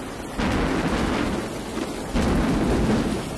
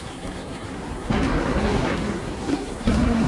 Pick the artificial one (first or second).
second